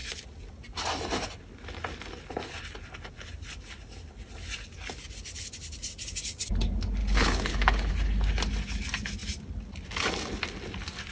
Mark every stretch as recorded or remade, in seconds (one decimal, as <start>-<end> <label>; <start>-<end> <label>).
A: 0.0-7.0 recorded; 7.0-7.9 remade; 7.9-11.1 recorded